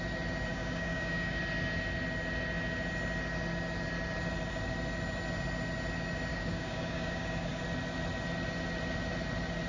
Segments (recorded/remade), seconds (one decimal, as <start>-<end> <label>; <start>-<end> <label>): 0.0-0.5 recorded; 0.5-1.4 remade; 1.4-6.3 recorded; 6.3-7.6 remade; 7.6-9.7 recorded

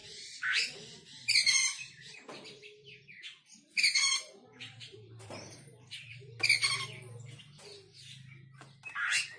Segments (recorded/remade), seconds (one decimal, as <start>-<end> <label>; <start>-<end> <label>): 0.0-0.5 remade; 0.5-1.6 recorded; 1.6-6.4 remade; 6.4-9.4 recorded

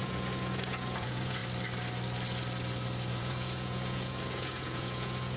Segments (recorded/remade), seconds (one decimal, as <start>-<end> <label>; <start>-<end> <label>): 0.0-1.4 remade; 1.4-3.2 recorded; 3.2-5.4 remade